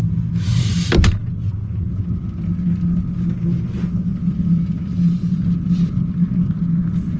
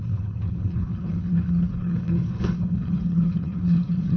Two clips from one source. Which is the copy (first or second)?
second